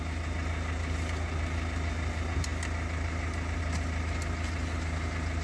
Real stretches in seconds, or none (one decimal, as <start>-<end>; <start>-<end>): 0.0-5.4